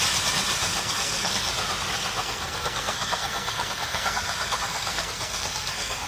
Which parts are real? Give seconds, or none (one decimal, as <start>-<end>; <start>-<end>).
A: 0.0-0.7; 1.5-2.2